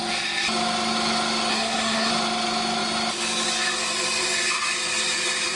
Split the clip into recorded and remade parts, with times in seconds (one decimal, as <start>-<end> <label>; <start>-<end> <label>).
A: 0.0-1.5 recorded; 1.5-2.1 remade; 2.1-5.6 recorded

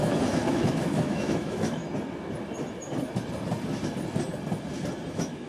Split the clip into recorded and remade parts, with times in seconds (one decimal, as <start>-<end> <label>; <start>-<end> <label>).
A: 0.0-1.8 remade; 1.8-5.1 recorded; 5.1-5.5 remade